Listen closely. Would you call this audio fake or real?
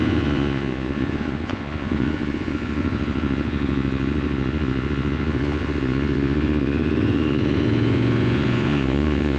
fake